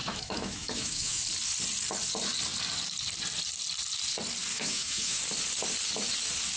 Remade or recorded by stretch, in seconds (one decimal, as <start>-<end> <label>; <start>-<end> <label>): 0.0-1.2 remade; 1.2-4.5 recorded; 4.5-5.2 remade; 5.2-6.6 recorded